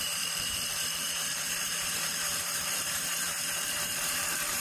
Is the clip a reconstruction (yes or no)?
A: yes